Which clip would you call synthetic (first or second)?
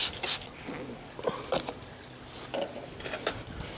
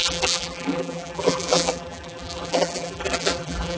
second